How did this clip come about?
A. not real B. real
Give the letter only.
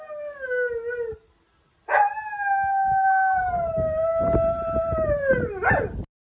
B